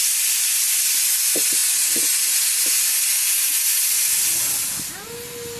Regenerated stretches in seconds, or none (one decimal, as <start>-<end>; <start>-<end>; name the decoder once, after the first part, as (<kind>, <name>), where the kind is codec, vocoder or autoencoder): none